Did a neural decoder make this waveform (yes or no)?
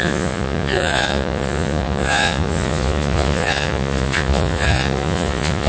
yes